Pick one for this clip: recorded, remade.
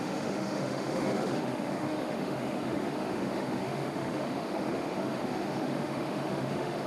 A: remade